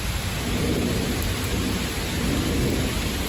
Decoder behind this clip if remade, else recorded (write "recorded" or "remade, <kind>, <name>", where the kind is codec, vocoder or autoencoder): recorded